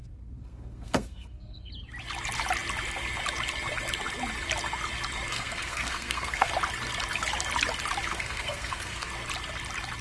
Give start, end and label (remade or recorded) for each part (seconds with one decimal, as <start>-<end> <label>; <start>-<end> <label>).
0.0-1.7 remade; 1.7-5.3 recorded; 5.3-6.5 remade; 6.5-8.1 recorded; 8.1-9.1 remade; 9.1-10.0 recorded